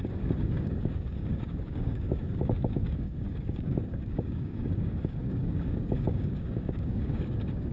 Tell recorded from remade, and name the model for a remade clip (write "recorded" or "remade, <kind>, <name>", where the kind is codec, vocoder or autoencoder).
remade, codec, DAC